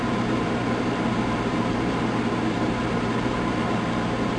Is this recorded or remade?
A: remade